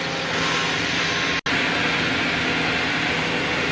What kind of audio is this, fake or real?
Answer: real